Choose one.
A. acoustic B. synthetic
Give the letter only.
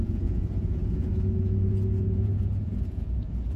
B